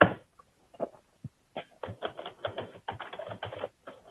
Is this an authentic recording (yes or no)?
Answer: yes